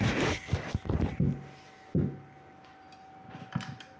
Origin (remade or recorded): recorded